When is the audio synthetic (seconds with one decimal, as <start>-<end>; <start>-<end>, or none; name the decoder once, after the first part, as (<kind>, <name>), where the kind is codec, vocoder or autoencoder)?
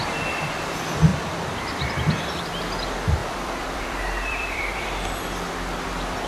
1.1-2.6 (vocoder, BigVGAN v2); 3.2-5.5